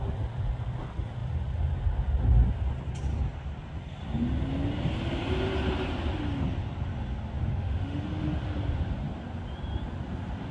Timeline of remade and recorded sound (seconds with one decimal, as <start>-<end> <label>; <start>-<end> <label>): 0.0-7.5 recorded; 7.5-8.0 remade; 8.0-10.5 recorded

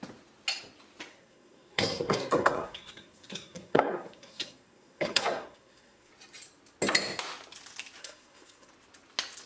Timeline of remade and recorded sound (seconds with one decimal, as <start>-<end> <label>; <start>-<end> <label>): 0.0-1.1 recorded; 1.1-6.1 remade; 6.1-8.0 recorded; 8.0-8.7 remade; 8.7-9.5 recorded

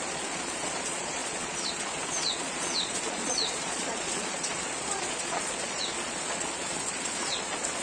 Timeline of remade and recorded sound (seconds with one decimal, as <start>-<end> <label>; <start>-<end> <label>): 0.0-7.8 remade

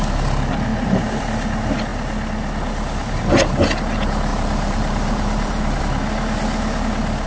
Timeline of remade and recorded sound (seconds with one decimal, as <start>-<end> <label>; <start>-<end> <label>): 0.0-0.7 recorded; 0.7-1.2 remade; 1.2-4.3 recorded; 4.3-5.8 remade; 5.8-7.3 recorded

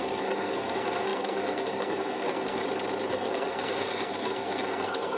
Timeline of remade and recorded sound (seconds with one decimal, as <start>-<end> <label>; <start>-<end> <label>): 0.0-2.6 remade; 2.6-3.1 recorded; 3.1-5.2 remade

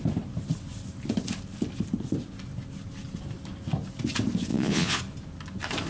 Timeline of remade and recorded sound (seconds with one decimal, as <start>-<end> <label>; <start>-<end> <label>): 0.0-4.5 recorded; 4.5-5.0 remade; 5.0-5.9 recorded

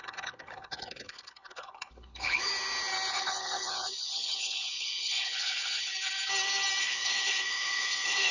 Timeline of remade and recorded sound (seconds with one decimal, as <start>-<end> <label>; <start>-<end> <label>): 0.0-2.5 remade; 2.5-3.1 recorded; 3.1-5.9 remade; 5.9-6.8 recorded; 6.8-8.3 remade

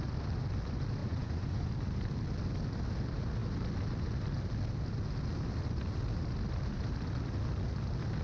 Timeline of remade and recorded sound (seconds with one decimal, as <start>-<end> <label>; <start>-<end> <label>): 0.0-1.0 recorded; 1.0-1.7 remade; 1.7-8.2 recorded